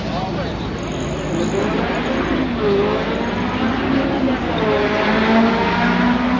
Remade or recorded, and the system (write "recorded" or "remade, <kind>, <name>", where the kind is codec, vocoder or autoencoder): recorded